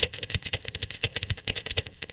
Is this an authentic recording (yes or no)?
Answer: no